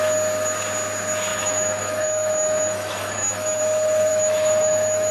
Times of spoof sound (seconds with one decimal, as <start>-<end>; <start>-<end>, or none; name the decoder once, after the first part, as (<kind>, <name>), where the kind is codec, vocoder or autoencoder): 1.3-3.6 (autoencoder, DAC-VAE); 4.1-5.1